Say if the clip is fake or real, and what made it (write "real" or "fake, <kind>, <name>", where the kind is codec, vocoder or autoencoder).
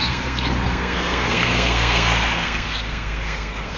fake, codec, SNAC